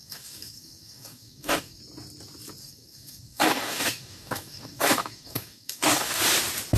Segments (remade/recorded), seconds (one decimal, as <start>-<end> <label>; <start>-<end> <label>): 0.0-1.8 remade; 1.8-2.6 recorded; 2.6-6.2 remade; 6.2-6.8 recorded

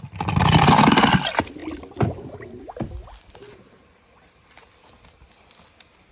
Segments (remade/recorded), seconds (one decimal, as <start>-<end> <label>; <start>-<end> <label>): 0.0-6.1 recorded

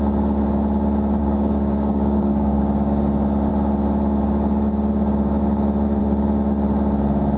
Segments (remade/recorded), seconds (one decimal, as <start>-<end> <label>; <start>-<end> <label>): 0.0-1.2 recorded; 1.2-2.6 remade; 2.6-7.4 recorded

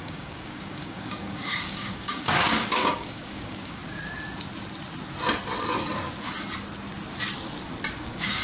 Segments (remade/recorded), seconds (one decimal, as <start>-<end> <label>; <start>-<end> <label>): 0.0-3.8 remade; 3.8-7.9 recorded; 7.9-8.4 remade

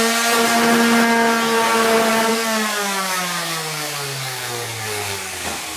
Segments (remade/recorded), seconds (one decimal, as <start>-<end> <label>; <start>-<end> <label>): 0.0-2.1 recorded; 2.1-5.8 remade

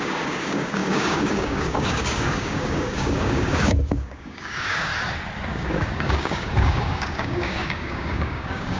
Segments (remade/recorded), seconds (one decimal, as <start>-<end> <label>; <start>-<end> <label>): 0.0-4.9 remade; 4.9-5.5 recorded; 5.5-8.8 remade